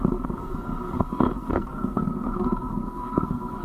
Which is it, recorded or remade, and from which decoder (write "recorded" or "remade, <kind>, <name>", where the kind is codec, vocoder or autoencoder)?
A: remade, codec, SNAC